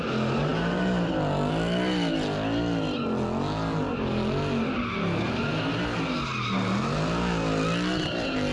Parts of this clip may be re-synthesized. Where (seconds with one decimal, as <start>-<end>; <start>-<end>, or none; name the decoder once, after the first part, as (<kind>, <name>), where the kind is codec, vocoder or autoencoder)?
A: none